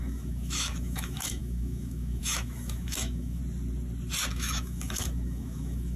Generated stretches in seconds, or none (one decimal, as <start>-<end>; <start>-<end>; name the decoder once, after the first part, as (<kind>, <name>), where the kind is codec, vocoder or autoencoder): 0.0-3.4 (autoencoder, DAC-VAE); 4.3-6.0